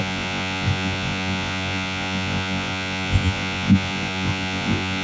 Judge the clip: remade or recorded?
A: remade